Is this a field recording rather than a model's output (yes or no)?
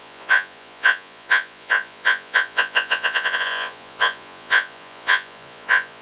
no